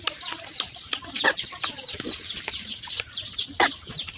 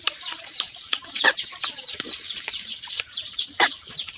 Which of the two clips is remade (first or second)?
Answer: second